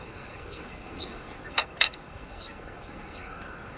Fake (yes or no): yes